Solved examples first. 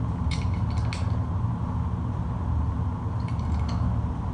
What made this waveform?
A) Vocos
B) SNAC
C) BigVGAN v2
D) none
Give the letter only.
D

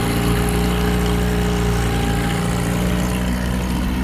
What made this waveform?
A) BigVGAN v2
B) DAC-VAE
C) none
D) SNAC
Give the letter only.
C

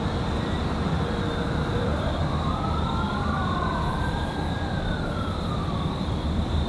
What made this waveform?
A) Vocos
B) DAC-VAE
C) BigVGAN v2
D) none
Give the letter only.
C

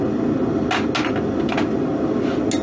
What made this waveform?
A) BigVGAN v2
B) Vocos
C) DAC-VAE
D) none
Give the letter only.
D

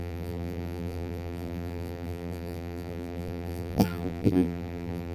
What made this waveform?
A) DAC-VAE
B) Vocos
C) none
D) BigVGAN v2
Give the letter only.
D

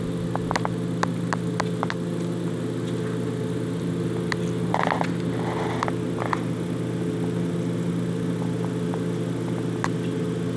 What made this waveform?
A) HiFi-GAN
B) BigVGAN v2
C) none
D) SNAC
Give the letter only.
C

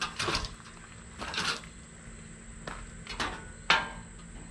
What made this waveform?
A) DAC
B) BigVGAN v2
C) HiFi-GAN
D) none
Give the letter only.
D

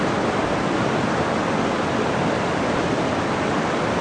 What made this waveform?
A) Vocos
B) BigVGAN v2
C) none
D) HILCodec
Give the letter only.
C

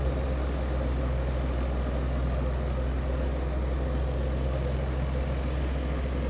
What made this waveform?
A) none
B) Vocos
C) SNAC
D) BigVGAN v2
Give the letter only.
A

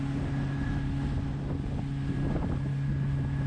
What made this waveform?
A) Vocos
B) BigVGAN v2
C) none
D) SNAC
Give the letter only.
C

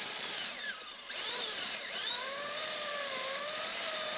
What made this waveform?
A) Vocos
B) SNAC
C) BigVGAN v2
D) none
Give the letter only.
C